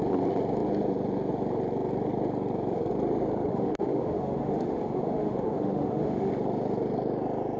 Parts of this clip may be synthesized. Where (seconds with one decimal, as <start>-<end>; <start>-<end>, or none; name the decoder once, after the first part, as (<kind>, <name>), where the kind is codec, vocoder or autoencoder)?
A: 3.5-6.3 (autoencoder, DAC-VAE)